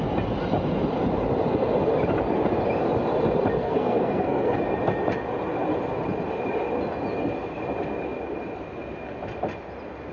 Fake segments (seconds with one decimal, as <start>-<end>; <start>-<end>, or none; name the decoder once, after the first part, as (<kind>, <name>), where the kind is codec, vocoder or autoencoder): 3.6-4.6 (codec, SNAC)